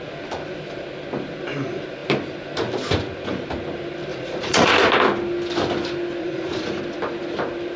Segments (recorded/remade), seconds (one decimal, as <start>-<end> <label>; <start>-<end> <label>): 0.0-4.1 recorded; 4.1-4.7 remade; 4.7-6.2 recorded; 6.2-6.8 remade; 6.8-7.8 recorded